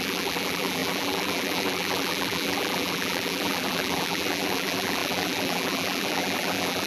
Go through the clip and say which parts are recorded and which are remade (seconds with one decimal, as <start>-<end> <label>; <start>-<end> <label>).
0.0-6.9 remade